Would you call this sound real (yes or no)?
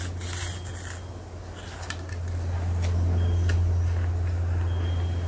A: yes